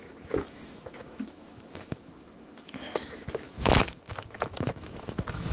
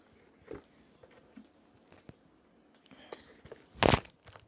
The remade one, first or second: first